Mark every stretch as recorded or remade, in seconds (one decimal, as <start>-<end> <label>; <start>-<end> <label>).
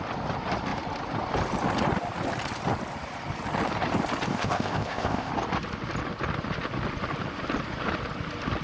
0.0-4.3 recorded; 4.3-5.3 remade; 5.3-8.6 recorded